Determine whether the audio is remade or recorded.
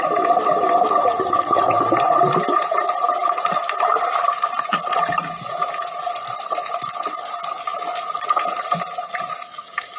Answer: recorded